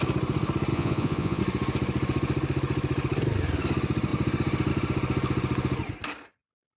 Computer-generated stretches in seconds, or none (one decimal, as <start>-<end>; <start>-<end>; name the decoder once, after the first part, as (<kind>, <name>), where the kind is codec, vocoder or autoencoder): 0.7-1.4 (vocoder, Vocos)